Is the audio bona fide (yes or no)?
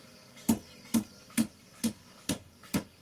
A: yes